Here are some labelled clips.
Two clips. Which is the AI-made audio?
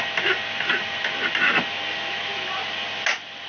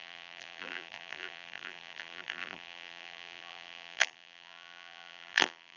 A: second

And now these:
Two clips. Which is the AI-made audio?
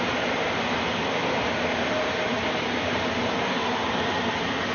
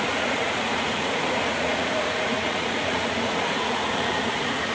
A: second